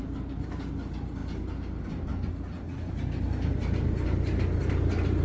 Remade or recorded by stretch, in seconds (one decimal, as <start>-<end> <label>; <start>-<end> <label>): 0.0-5.2 recorded

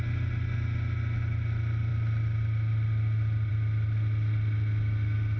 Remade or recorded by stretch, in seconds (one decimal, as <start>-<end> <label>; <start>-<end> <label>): 0.0-5.4 recorded

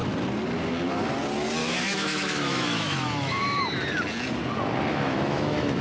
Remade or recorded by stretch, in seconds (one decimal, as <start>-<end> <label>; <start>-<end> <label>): 0.0-1.6 recorded; 1.6-3.6 remade; 3.6-4.9 recorded; 4.9-5.8 remade

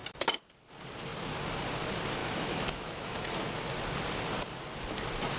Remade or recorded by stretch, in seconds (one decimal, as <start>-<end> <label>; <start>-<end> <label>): 0.0-2.2 recorded; 2.2-3.3 remade; 3.3-5.4 recorded

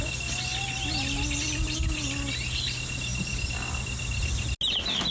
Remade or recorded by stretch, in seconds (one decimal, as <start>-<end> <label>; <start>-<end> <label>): 0.0-5.1 recorded

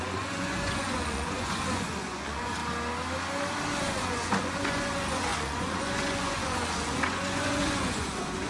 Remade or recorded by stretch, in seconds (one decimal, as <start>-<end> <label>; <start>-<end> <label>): 0.0-2.6 remade; 2.6-3.8 recorded; 3.8-8.5 remade